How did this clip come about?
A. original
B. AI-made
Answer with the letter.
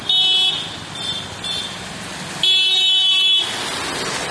A